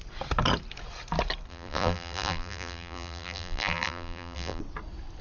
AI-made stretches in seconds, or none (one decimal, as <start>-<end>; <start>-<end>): 1.5-4.6